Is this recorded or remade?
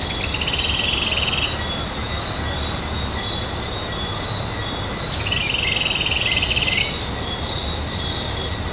recorded